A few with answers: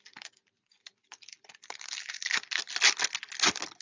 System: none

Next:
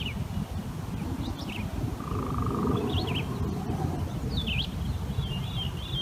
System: none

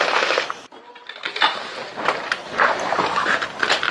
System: vocoder, BigVGAN v2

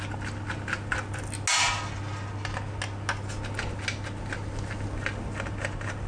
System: none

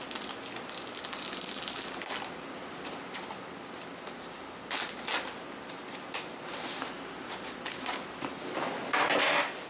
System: none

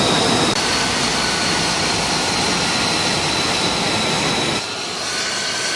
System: none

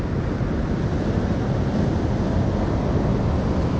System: none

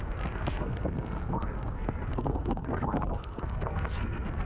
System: codec, SNAC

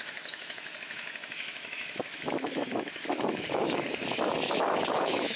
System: autoencoder, DAC-VAE